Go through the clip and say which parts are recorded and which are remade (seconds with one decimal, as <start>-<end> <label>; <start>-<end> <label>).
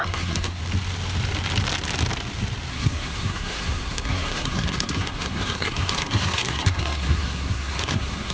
0.0-0.6 remade; 0.6-2.7 recorded; 2.7-8.3 remade